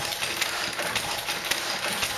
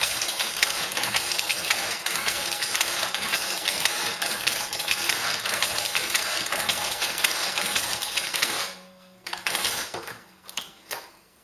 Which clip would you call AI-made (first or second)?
second